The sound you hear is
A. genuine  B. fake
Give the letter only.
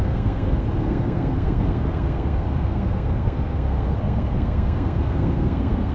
B